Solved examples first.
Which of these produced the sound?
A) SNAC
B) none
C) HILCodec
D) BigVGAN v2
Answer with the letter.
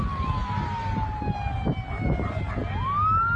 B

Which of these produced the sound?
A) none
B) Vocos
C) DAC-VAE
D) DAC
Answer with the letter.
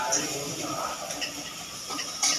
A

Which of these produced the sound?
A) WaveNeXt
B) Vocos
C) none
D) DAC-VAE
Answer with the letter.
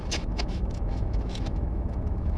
D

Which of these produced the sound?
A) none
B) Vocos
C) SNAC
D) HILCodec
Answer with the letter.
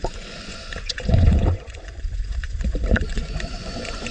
B